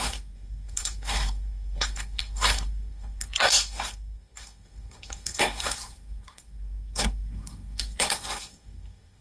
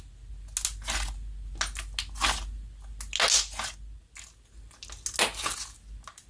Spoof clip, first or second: first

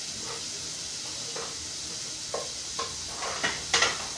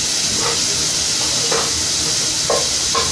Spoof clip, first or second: first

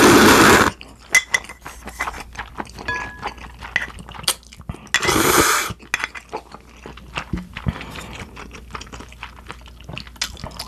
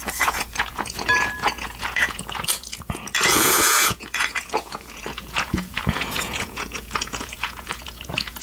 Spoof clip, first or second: second